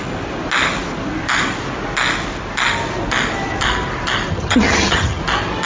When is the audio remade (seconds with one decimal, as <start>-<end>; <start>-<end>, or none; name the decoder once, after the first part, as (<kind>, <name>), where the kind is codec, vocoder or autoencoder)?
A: 4.3-5.2 (vocoder, HiFi-GAN)